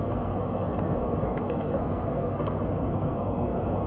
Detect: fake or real fake